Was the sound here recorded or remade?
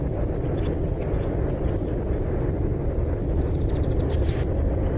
recorded